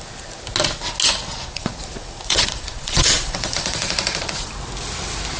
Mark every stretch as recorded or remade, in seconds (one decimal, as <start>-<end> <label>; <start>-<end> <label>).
0.0-1.3 recorded; 1.3-4.5 remade; 4.5-5.4 recorded